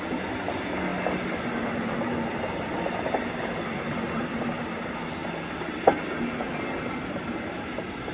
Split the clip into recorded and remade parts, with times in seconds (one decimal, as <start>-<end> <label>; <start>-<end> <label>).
0.0-8.1 recorded